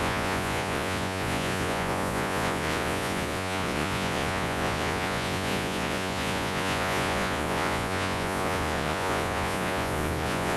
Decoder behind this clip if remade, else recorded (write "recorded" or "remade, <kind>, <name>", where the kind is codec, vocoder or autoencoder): remade, vocoder, Vocos